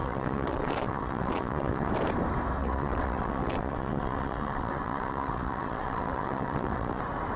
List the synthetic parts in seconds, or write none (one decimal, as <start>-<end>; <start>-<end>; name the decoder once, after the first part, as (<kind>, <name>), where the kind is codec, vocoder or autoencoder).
0.0-1.9 (vocoder, WaveNeXt); 2.6-7.0